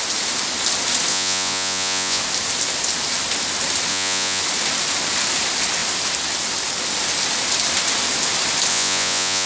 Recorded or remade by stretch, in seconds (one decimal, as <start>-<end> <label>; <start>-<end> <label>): 0.0-1.1 recorded; 1.1-2.2 remade; 2.2-3.9 recorded; 3.9-4.4 remade; 4.4-8.7 recorded; 8.7-9.5 remade